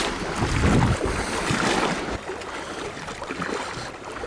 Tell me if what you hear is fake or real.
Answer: real